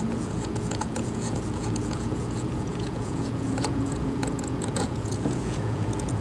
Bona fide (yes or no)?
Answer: no